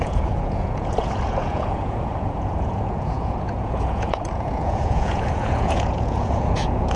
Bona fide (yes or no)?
no